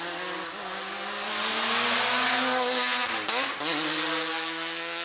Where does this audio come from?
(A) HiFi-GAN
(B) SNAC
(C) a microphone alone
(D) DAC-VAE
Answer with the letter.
C